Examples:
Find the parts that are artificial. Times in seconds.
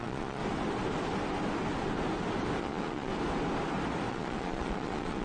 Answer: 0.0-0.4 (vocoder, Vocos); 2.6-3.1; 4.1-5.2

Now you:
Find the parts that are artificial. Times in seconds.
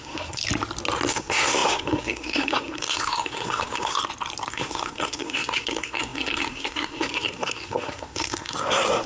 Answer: 0.0-0.4 (codec, SNAC); 1.1-4.0; 4.5-9.1